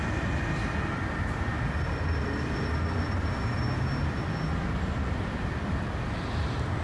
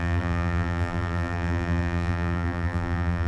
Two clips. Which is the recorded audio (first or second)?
first